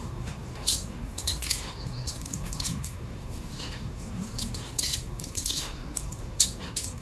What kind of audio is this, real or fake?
fake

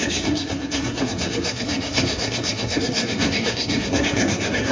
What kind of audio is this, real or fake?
fake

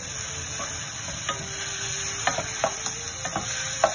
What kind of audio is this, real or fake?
real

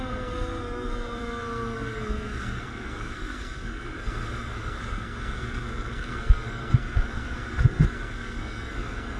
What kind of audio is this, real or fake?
fake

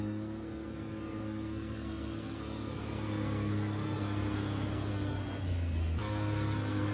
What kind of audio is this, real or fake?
fake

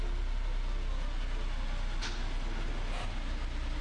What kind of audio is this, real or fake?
real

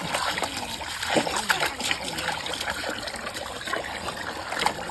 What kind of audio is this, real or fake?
real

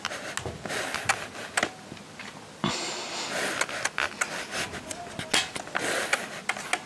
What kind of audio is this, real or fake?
real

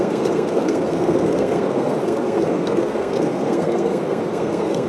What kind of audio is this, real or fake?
fake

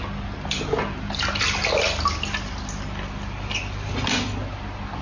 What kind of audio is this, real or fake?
real